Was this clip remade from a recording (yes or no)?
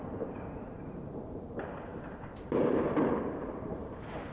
yes